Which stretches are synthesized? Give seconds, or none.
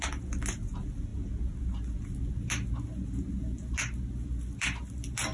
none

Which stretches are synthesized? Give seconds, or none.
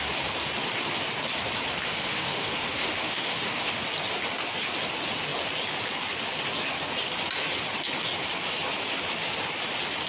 1.8-3.8 (autoencoder, DAC-VAE)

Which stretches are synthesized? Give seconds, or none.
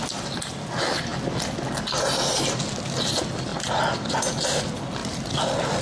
5.0-5.8 (vocoder, BigVGAN v2)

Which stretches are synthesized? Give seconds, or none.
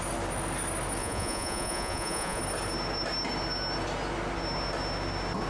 1.0-2.4 (vocoder, Vocos)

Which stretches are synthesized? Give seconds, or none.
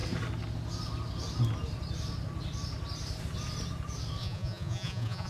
4.2-5.3 (vocoder, Vocos)